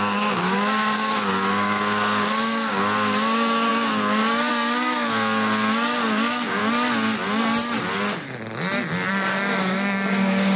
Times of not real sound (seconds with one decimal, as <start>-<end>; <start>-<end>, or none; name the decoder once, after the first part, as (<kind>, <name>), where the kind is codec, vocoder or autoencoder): 0.0-6.6 (codec, DAC); 9.1-10.6